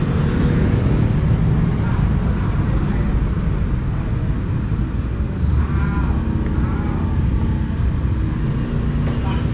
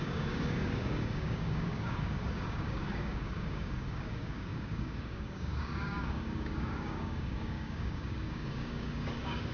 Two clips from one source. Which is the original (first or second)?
first